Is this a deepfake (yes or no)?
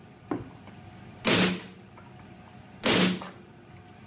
no